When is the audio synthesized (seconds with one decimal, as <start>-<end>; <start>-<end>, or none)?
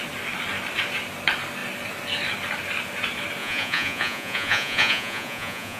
3.4-5.8